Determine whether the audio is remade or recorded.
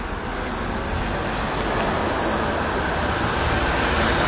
recorded